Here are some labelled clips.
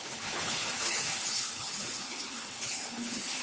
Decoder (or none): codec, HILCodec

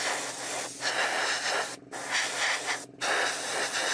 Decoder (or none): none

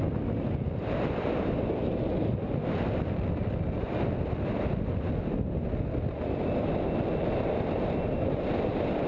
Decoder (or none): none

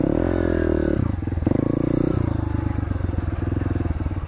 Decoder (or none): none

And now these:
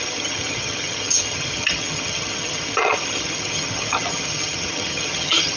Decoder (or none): vocoder, HiFi-GAN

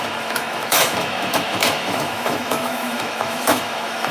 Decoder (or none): autoencoder, DAC-VAE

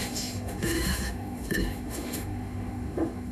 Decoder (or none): autoencoder, DAC-VAE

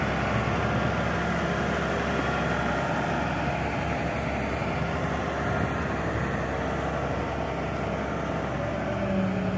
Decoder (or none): none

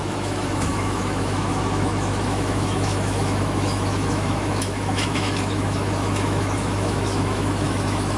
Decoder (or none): autoencoder, DAC-VAE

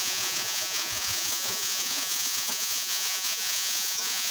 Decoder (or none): vocoder, Vocos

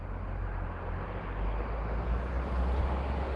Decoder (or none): none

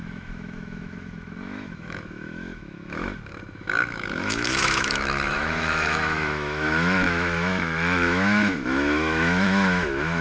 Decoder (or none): autoencoder, DAC-VAE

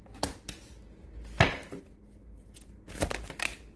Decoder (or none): none